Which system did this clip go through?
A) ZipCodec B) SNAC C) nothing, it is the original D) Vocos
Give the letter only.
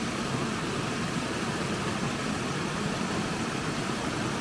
C